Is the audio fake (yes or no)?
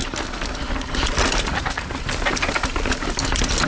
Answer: no